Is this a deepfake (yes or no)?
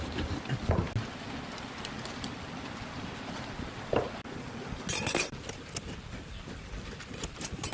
no